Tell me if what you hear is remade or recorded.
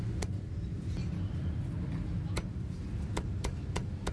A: recorded